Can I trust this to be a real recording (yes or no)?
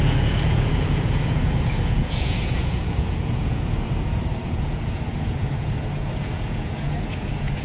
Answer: no